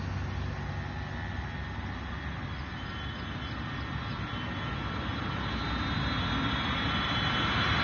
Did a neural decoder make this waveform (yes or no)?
no